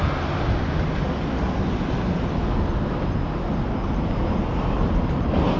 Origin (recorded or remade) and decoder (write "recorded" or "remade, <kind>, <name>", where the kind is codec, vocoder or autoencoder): recorded